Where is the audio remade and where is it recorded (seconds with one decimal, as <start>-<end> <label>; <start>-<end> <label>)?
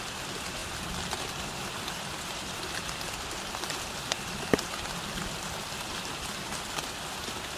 0.0-7.6 recorded